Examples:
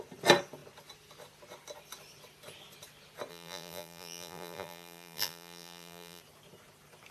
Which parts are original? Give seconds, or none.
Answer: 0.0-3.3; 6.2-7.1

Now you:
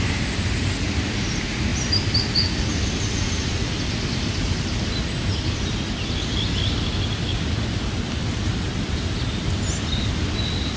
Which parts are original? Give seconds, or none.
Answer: 0.0-10.8